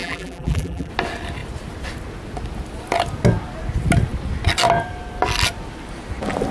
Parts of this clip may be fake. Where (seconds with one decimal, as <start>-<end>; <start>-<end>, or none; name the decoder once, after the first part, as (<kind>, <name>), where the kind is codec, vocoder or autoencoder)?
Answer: 0.0-0.9 (vocoder, BigVGAN v2)